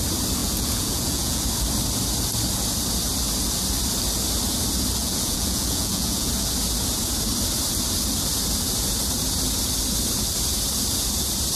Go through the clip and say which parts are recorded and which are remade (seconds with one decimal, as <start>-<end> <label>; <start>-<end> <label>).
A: 0.0-0.4 recorded; 0.4-1.4 remade; 1.4-5.0 recorded; 5.0-6.3 remade; 6.3-11.6 recorded